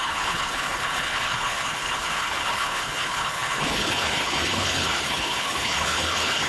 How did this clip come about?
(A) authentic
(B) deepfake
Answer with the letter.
B